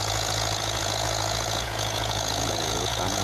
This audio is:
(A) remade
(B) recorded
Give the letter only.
A